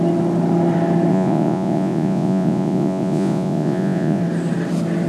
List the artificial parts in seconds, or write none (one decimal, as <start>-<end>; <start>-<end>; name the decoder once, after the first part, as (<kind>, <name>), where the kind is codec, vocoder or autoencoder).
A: 1.1-4.2 (vocoder, Vocos)